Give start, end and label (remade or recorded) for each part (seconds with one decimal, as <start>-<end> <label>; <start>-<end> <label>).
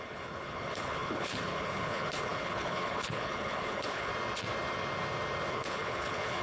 0.0-4.1 remade; 4.1-5.5 recorded; 5.5-6.4 remade